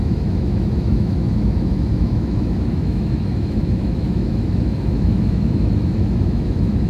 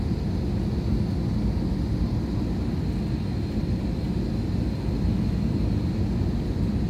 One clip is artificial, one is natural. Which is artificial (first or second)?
first